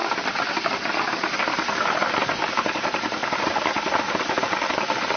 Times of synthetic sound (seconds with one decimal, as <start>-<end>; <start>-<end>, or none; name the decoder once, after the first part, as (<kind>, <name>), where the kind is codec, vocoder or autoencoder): 0.0-0.7 (vocoder, BigVGAN v2); 3.2-3.9